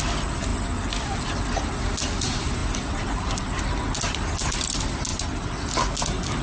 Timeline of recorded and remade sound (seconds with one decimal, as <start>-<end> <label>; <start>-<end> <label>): 0.0-6.4 recorded